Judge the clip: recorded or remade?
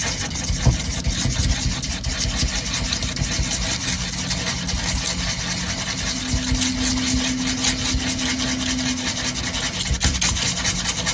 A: recorded